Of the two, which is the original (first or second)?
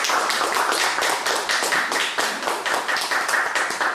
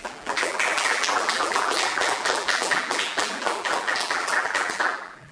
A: first